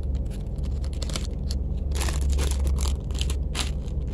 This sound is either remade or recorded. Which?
recorded